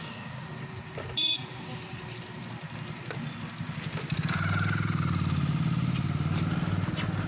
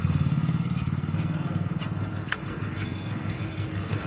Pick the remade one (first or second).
second